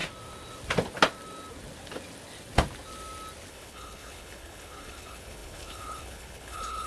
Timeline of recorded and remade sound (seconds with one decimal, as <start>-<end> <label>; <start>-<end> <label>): 0.0-3.5 recorded; 3.5-6.9 remade